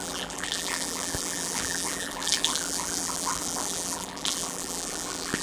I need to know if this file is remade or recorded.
remade